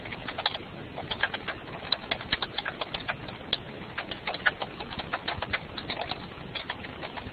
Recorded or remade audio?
recorded